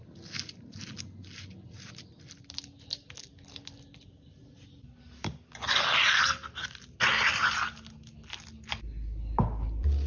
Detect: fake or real real